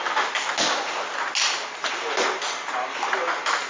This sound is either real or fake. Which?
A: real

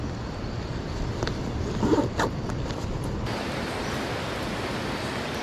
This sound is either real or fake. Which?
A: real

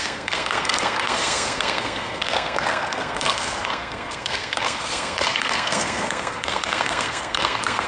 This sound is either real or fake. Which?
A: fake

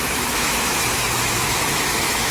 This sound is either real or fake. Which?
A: fake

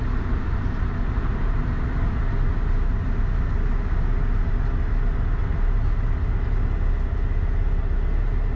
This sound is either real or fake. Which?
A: real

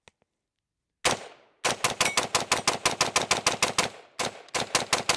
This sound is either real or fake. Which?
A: real